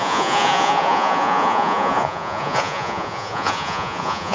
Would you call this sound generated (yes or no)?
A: yes